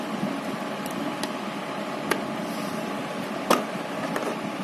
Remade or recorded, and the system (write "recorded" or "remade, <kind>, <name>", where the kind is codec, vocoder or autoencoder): recorded